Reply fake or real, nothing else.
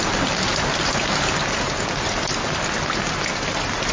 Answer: real